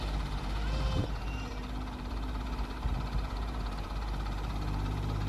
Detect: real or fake fake